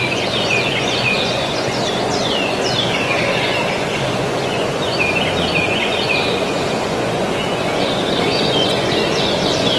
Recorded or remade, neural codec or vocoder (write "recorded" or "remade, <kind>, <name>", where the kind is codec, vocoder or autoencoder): remade, vocoder, Vocos